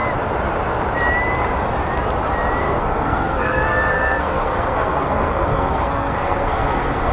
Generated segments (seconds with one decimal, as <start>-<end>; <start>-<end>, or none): 2.6-7.1